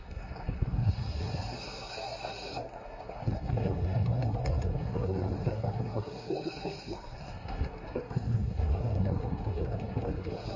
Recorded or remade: remade